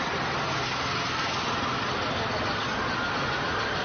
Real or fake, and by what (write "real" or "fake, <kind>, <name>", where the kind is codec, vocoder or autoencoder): real